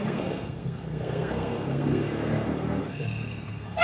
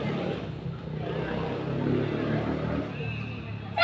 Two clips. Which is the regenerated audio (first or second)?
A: first